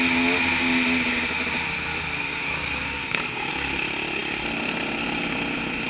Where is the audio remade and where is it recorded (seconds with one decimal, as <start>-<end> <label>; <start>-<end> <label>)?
0.0-2.2 recorded; 2.2-3.5 remade; 3.5-5.9 recorded